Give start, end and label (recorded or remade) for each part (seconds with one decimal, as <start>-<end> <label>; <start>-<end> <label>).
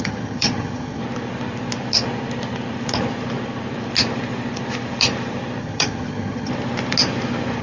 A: 0.0-1.0 remade; 1.0-5.6 recorded; 5.6-6.5 remade; 6.5-7.6 recorded